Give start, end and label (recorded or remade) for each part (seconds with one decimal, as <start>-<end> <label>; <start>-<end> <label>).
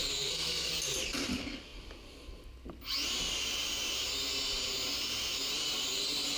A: 0.0-0.7 remade; 0.7-6.4 recorded